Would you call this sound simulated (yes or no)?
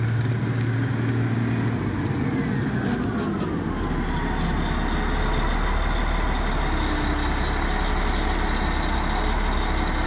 no